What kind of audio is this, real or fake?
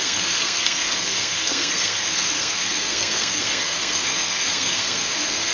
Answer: fake